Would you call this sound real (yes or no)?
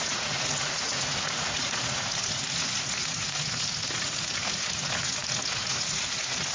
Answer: no